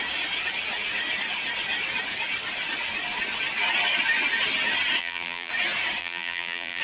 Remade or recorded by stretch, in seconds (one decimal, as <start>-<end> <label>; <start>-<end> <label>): 0.0-5.0 recorded; 5.0-5.5 remade; 5.5-6.0 recorded; 6.0-6.8 remade